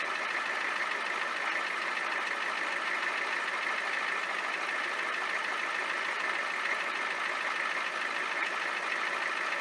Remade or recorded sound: recorded